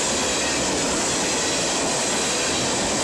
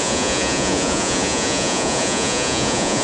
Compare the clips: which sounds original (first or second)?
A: first